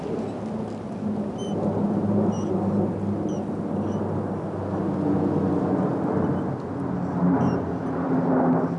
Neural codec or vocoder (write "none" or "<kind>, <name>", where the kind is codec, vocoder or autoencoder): none